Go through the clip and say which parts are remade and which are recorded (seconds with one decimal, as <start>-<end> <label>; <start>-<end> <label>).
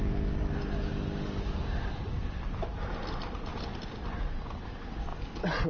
0.0-5.7 recorded